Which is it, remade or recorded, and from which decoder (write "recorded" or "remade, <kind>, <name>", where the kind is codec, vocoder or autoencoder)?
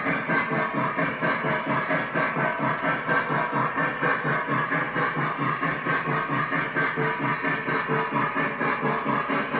recorded